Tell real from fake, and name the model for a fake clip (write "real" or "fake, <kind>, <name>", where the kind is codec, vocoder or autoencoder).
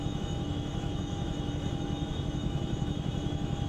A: fake, autoencoder, DAC-VAE